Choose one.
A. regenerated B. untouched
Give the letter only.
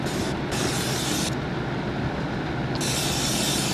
B